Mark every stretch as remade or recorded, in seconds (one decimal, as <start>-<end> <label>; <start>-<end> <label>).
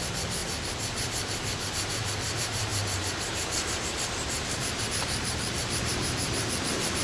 0.0-0.4 remade; 0.4-1.7 recorded; 1.7-7.0 remade